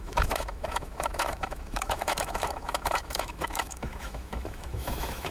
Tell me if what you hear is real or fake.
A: fake